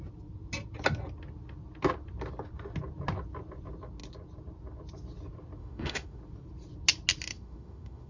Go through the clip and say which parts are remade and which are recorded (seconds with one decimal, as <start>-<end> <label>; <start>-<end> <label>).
0.0-5.6 recorded; 5.6-6.2 remade; 6.2-7.3 recorded; 7.3-8.1 remade